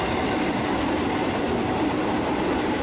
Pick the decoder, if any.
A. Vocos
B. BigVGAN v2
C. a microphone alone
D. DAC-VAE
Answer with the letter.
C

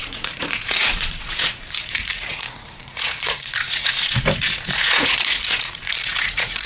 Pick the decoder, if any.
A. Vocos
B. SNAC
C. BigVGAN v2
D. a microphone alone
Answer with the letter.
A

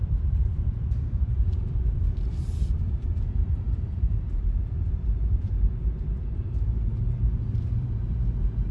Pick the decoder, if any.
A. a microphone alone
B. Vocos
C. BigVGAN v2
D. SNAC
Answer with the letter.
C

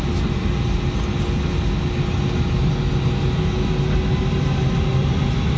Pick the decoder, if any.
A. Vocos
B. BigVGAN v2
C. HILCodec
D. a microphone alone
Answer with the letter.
D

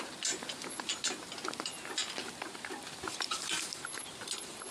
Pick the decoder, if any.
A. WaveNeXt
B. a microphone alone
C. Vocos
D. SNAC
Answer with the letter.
B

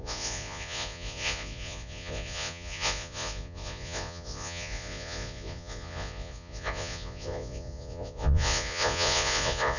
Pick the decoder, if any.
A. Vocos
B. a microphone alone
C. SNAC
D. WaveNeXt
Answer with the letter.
A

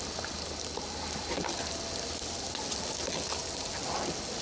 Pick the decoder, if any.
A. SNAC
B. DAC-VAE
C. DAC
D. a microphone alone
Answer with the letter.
D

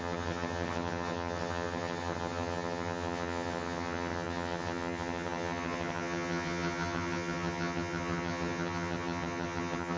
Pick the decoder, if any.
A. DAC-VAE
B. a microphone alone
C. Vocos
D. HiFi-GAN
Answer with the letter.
D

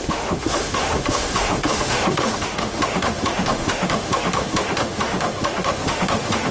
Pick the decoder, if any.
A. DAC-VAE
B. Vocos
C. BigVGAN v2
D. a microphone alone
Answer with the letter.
A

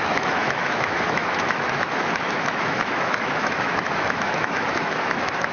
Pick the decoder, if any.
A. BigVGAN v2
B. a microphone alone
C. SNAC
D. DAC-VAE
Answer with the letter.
D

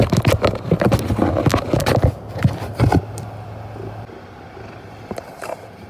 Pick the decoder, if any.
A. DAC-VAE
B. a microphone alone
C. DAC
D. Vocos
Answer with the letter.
B